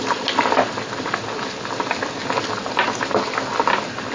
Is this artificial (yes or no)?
no